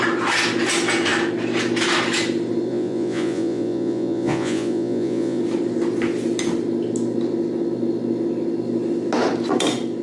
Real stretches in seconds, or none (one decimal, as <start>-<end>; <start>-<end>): 0.0-2.7; 5.4-10.0

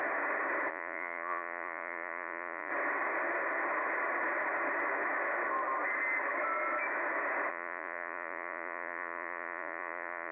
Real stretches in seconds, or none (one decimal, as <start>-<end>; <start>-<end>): 0.0-0.7; 2.7-7.5

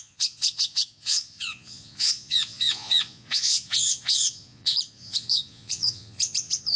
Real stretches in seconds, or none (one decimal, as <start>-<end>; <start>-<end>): none

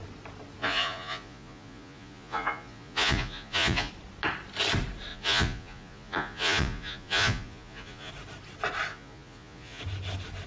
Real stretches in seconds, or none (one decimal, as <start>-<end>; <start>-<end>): 0.0-0.6; 3.9-5.1; 8.1-8.9; 9.8-10.5

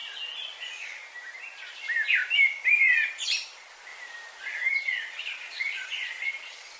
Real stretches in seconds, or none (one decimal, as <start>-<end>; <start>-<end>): 0.0-0.6; 1.0-2.8; 3.9-4.7

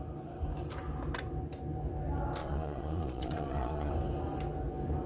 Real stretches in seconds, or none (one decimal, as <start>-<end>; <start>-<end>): 0.0-2.4; 3.9-5.1